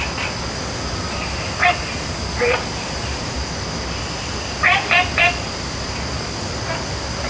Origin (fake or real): real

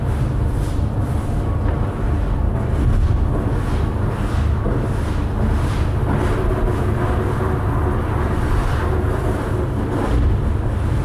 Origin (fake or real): real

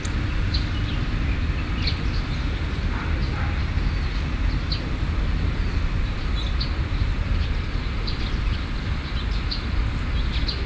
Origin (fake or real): real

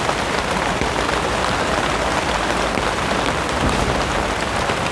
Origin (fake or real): real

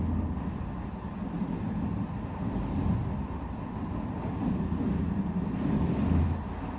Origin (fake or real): real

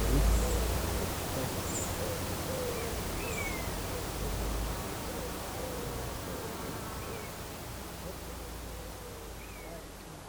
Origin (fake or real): real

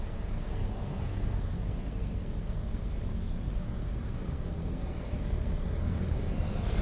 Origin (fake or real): fake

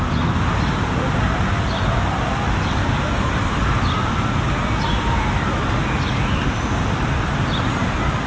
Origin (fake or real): real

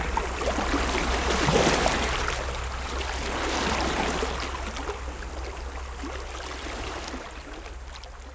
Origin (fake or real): real